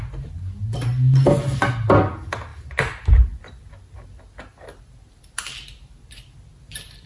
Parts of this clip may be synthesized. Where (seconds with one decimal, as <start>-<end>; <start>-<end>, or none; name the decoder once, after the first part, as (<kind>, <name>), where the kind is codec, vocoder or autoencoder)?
none